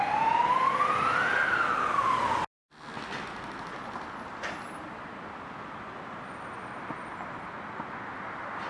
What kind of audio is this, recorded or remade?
recorded